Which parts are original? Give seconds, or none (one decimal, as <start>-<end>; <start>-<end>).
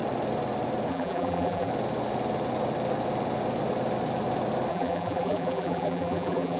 0.0-0.9; 1.7-4.7